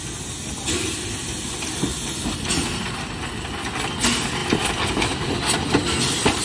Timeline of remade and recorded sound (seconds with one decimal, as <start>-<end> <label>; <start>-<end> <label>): 0.0-6.4 recorded